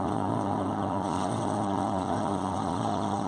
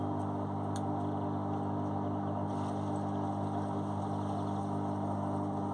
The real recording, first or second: second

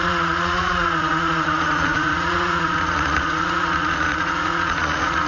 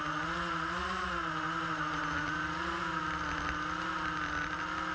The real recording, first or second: second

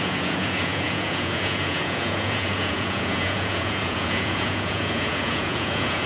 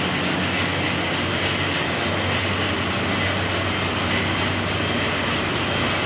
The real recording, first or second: second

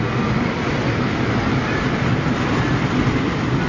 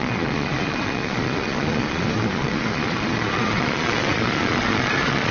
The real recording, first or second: first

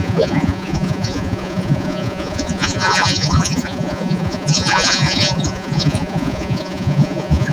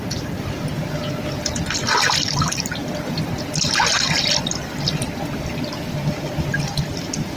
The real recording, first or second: second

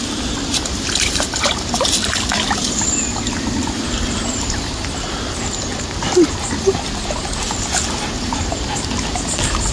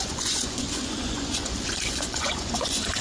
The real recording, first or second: first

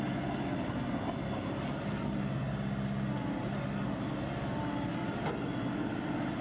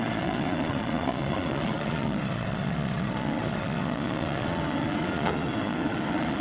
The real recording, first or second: first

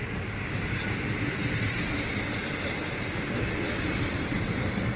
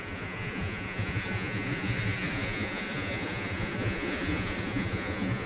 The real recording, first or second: first